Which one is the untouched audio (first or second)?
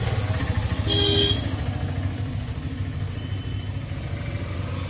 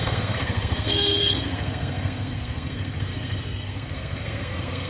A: first